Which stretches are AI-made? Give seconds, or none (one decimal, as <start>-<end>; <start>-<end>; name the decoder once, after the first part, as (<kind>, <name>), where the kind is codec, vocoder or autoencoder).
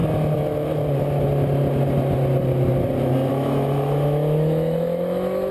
3.3-5.5 (autoencoder, DAC-VAE)